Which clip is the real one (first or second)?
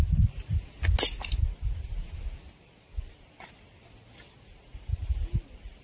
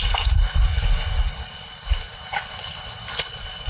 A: first